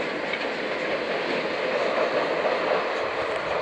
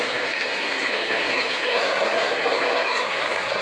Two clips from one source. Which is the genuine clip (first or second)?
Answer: first